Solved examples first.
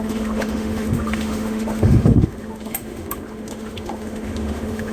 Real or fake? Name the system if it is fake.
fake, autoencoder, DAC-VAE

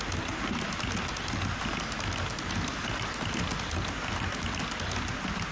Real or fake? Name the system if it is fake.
real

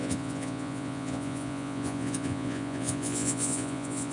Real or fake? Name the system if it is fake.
fake, vocoder, Vocos